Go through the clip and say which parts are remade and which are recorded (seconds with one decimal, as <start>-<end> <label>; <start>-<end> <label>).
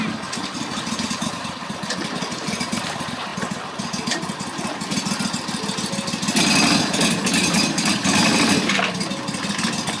0.0-10.0 recorded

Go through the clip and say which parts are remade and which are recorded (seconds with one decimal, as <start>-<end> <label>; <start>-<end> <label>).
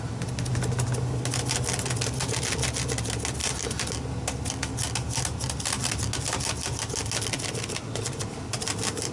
0.0-9.1 recorded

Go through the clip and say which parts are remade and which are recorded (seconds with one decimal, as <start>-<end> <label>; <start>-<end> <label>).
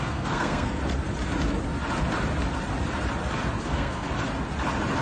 0.0-0.8 remade; 0.8-3.6 recorded; 3.6-4.1 remade; 4.1-5.0 recorded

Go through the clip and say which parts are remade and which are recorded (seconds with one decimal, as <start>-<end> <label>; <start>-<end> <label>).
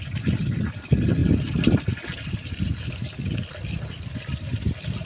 0.0-5.1 recorded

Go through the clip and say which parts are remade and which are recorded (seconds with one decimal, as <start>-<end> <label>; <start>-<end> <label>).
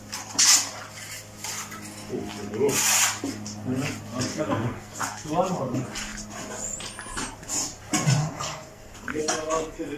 0.0-4.3 recorded; 4.3-5.3 remade; 5.3-8.2 recorded; 8.2-10.0 remade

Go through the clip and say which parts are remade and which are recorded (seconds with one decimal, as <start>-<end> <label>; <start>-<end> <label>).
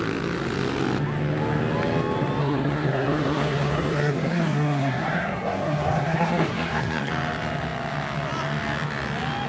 0.0-2.4 recorded; 2.4-7.1 remade; 7.1-9.5 recorded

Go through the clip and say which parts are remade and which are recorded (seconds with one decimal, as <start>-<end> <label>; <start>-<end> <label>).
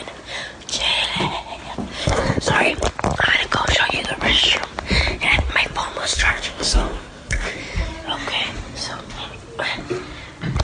0.0-2.0 recorded; 2.0-2.7 remade; 2.7-6.0 recorded; 6.0-7.6 remade; 7.6-10.6 recorded